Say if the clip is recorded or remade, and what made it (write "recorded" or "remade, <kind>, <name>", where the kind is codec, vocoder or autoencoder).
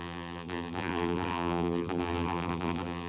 remade, vocoder, BigVGAN v2